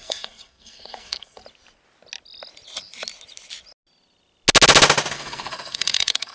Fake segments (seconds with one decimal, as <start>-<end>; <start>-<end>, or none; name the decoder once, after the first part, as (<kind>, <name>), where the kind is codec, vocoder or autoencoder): 0.0-1.4 (codec, SNAC); 5.1-6.3